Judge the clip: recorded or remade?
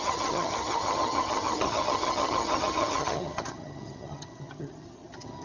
remade